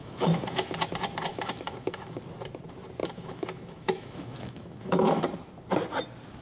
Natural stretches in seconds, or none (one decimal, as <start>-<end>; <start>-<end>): 0.8-1.3; 2.2-3.0; 5.2-6.4